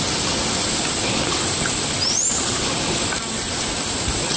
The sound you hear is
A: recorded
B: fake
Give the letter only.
A